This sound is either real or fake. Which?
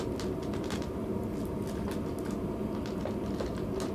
real